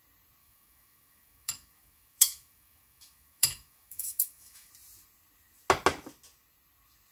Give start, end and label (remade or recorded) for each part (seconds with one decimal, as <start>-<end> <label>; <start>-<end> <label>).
0.0-0.4 recorded; 0.4-4.7 remade; 4.7-7.1 recorded